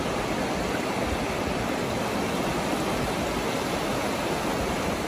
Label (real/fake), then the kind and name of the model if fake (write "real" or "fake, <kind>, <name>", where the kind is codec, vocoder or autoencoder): real